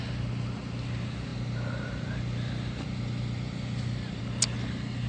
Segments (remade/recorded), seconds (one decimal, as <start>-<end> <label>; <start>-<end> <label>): 0.0-5.1 recorded